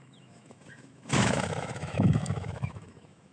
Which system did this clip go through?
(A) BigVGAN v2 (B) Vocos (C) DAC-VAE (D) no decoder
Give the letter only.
C